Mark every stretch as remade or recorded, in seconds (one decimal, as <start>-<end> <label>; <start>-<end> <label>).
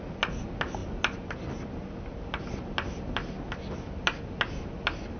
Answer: 0.0-5.2 recorded